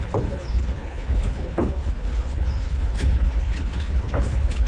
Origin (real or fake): fake